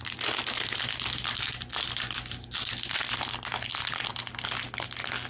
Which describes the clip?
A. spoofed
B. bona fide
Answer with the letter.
B